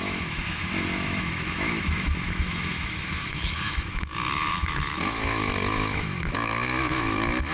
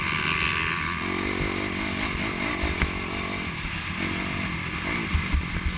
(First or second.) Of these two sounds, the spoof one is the first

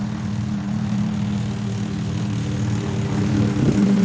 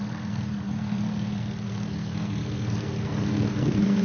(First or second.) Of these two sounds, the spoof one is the second